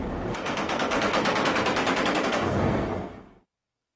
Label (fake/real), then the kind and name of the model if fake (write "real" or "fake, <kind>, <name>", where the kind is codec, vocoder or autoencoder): fake, codec, SNAC